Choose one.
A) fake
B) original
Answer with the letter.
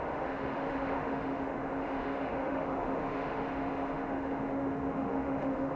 A